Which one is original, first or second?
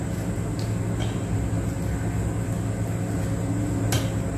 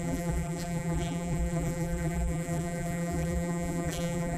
first